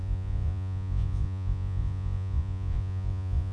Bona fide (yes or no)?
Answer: no